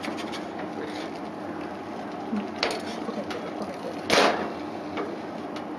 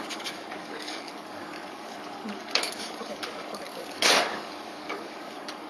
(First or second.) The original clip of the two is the first